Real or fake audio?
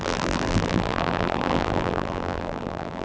fake